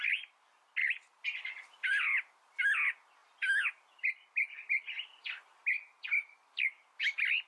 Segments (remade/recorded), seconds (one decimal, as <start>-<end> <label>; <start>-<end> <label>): 0.0-0.8 recorded; 0.8-2.6 remade; 2.6-7.5 recorded